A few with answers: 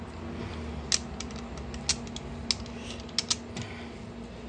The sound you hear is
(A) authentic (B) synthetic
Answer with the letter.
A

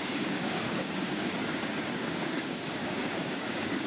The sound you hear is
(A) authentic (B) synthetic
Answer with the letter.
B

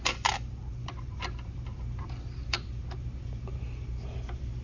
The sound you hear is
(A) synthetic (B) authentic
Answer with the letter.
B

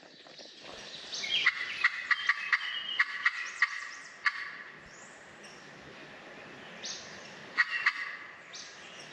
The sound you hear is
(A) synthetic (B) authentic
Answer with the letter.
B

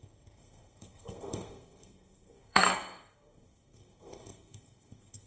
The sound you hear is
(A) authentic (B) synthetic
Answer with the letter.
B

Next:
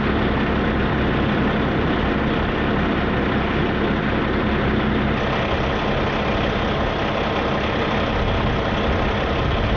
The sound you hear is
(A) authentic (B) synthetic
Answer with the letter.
A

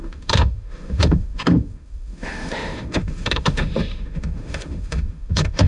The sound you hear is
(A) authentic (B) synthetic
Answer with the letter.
B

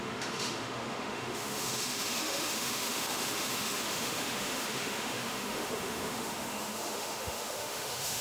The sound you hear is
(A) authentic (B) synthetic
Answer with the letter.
B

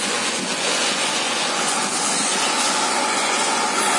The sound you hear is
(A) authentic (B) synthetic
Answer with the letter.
B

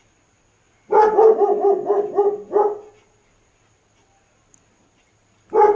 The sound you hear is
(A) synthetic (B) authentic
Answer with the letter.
B